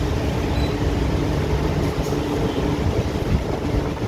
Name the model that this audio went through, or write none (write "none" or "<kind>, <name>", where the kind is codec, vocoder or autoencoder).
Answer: none